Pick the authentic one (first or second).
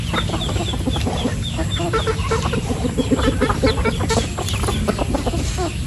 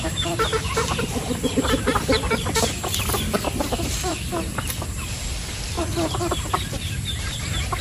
first